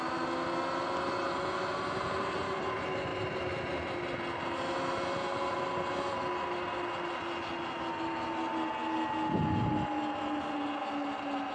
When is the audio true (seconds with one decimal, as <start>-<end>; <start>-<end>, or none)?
0.0-11.5